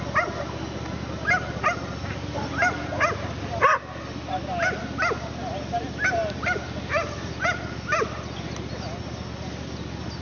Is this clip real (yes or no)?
yes